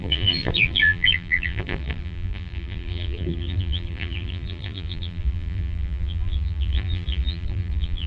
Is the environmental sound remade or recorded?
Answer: remade